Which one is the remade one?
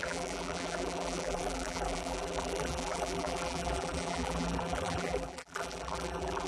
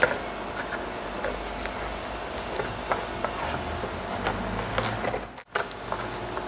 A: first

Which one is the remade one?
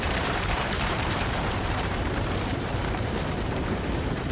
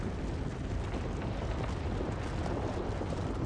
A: first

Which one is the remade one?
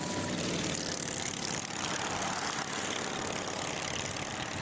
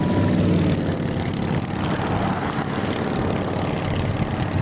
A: first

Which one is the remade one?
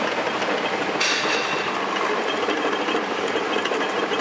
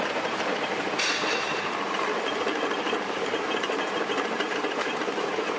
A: second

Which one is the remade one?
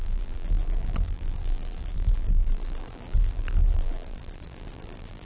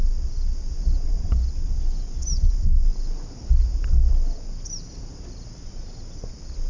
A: first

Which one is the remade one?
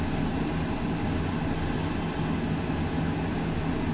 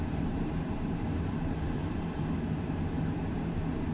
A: second